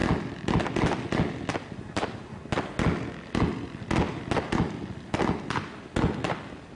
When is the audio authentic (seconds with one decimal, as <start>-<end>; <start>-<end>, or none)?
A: 0.0-6.8